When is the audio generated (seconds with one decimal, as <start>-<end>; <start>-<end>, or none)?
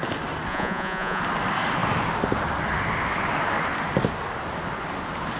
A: 0.5-1.2